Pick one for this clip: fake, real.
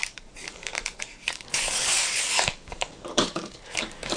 fake